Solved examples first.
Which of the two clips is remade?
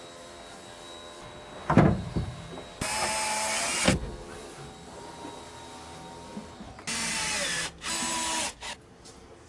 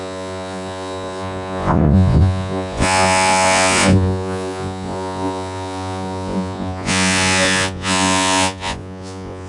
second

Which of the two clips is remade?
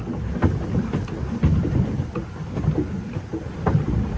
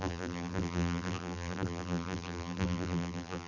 second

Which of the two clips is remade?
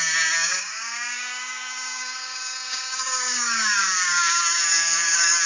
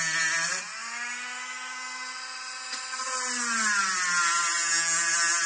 first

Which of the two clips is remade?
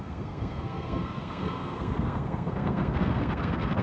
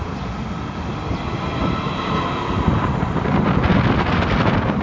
first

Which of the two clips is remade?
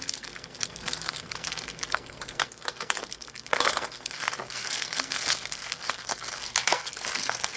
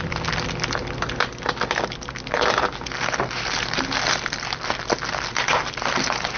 first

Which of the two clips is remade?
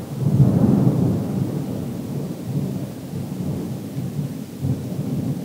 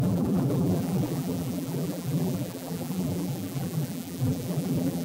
second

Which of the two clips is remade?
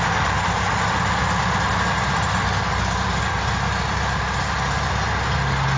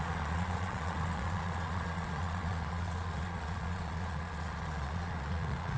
second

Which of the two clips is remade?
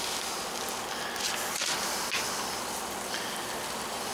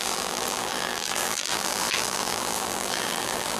second